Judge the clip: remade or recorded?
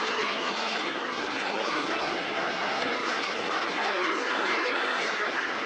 remade